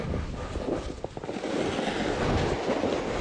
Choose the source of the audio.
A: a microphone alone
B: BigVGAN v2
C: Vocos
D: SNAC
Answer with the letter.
A